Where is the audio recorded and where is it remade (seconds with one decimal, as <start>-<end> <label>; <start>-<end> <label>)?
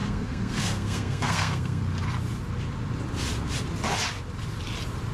0.0-1.8 remade; 1.8-5.1 recorded